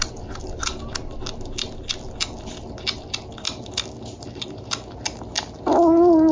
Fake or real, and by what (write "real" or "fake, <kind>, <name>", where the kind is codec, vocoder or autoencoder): real